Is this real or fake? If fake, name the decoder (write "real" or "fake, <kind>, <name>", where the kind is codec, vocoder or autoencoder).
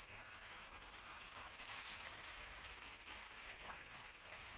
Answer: fake, codec, SNAC